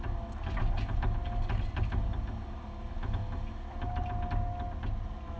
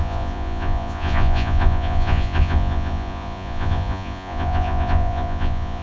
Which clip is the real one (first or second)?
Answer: first